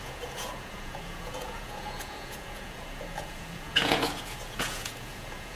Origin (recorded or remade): remade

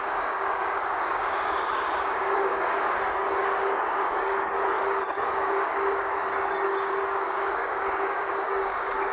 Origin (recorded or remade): remade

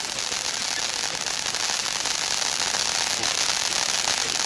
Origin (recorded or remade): recorded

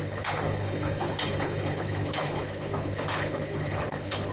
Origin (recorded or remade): remade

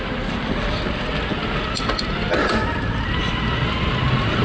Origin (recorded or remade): recorded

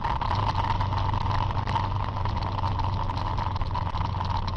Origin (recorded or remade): recorded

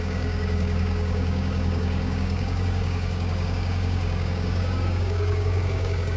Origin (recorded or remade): remade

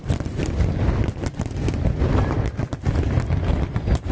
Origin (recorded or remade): recorded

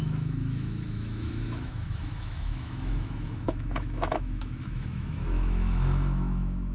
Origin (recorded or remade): remade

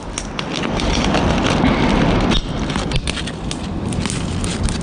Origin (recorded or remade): recorded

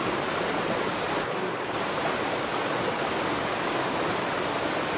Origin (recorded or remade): recorded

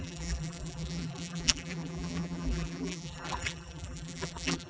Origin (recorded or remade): remade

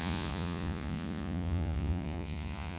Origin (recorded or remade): remade